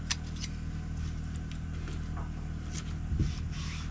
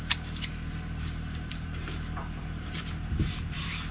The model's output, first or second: second